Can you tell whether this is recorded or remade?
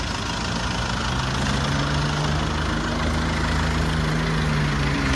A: recorded